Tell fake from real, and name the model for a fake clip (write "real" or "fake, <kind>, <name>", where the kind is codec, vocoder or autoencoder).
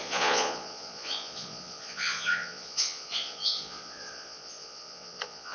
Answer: fake, vocoder, Vocos